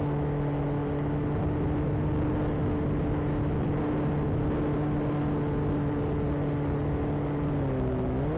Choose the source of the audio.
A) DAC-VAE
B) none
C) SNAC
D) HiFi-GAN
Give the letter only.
B